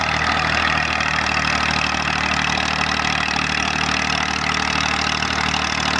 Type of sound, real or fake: real